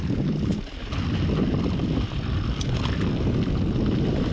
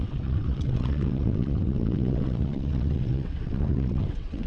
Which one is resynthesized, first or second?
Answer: second